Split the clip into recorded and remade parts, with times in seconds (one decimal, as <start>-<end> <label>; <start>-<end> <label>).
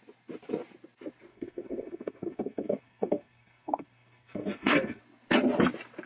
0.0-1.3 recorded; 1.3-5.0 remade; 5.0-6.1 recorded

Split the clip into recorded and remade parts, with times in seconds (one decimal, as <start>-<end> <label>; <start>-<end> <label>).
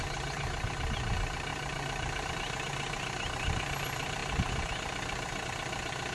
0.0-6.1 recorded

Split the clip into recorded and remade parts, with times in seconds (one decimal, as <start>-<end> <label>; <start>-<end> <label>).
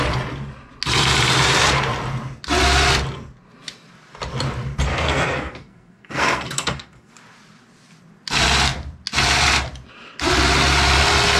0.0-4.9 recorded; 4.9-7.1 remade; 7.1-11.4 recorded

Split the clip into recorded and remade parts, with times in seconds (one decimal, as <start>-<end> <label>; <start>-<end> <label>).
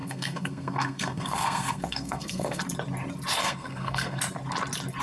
0.0-2.6 remade; 2.6-3.4 recorded; 3.4-4.2 remade; 4.2-5.0 recorded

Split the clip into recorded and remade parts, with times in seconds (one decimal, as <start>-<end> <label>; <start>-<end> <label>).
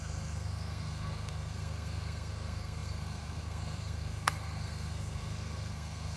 0.0-6.2 remade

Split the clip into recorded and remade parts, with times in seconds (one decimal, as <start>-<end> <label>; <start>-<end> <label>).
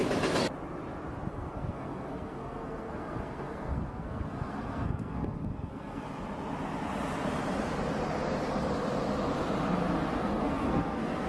0.0-1.3 recorded; 1.3-6.0 remade; 6.0-10.2 recorded; 10.2-11.3 remade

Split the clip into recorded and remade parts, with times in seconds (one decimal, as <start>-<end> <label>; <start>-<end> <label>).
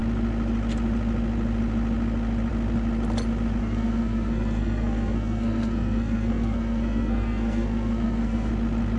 0.0-3.6 recorded; 3.6-8.5 remade; 8.5-9.0 recorded